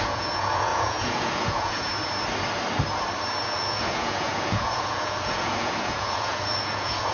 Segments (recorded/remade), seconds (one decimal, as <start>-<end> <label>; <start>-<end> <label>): 0.0-1.9 remade; 1.9-3.4 recorded; 3.4-7.1 remade

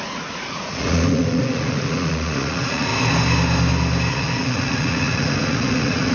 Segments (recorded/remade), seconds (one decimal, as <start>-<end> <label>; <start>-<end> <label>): 0.0-2.9 remade; 2.9-4.1 recorded; 4.1-6.1 remade